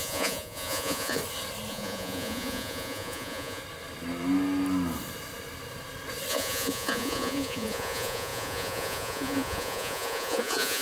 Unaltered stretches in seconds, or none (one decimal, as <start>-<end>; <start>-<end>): 1.2-1.7; 3.6-6.3